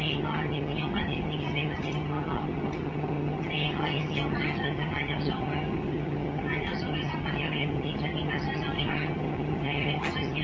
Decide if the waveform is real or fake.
fake